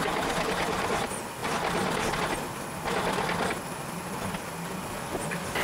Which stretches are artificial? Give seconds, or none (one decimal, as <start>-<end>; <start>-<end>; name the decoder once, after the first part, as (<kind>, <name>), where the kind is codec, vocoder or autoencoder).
none